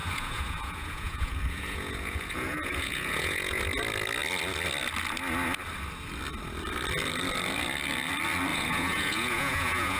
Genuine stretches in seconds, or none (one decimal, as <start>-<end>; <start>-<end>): 3.6-8.5

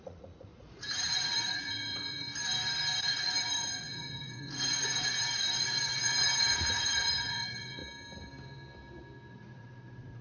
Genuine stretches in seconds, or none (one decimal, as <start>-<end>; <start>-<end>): 2.3-3.0; 7.8-9.3